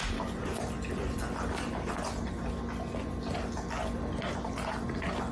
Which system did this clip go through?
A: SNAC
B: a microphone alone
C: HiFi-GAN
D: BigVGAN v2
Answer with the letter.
B